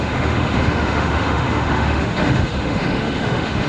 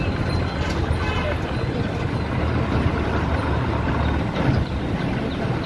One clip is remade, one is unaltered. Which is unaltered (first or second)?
second